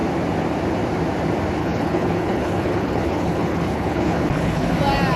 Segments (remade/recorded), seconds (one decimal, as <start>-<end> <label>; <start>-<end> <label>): 0.0-1.6 recorded; 1.6-4.7 remade; 4.7-5.2 recorded